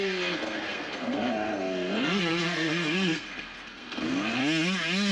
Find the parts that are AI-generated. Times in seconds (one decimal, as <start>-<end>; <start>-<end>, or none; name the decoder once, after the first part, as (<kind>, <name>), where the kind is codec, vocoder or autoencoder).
0.0-4.4 (codec, SNAC)